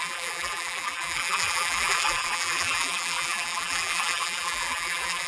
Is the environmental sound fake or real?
fake